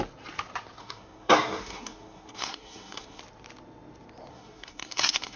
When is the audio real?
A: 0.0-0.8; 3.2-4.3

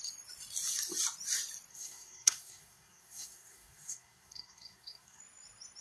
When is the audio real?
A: 0.0-1.7; 5.2-5.8

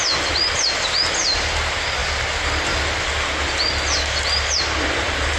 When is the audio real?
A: 0.0-5.4

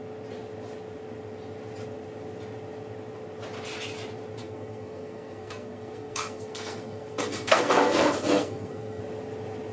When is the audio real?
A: 0.0-4.4; 9.0-9.7

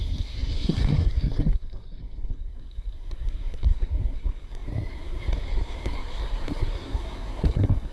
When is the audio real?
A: none

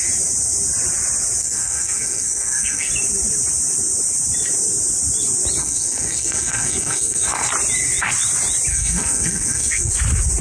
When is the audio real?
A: 0.0-1.4; 2.9-5.6; 7.5-8.7; 9.9-10.4